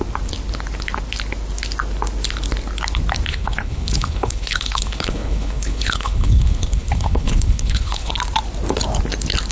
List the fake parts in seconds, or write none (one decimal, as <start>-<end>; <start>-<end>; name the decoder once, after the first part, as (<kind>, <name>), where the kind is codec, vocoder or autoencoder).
3.3-8.1 (codec, HILCodec)